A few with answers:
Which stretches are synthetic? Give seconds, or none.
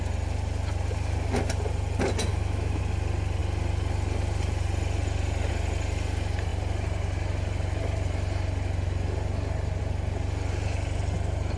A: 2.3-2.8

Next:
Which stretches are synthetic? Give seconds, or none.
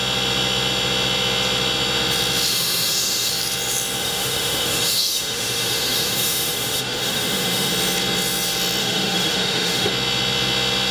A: 2.5-3.3; 4.0-7.7; 8.8-9.9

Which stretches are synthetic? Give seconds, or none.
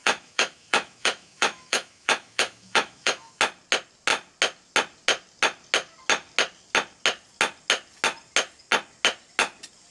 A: 0.0-3.4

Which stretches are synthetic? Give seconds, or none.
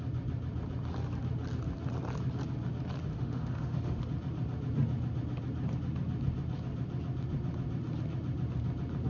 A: 3.1-4.0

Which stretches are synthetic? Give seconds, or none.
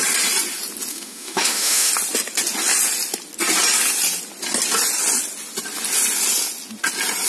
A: 0.9-1.9